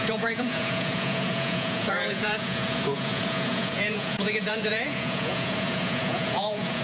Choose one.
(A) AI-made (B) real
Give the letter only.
A